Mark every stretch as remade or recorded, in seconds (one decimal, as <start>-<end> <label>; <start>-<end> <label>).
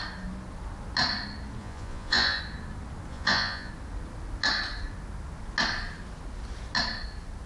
0.0-1.6 recorded; 1.6-2.4 remade; 2.4-3.1 recorded; 3.1-3.7 remade; 3.7-7.5 recorded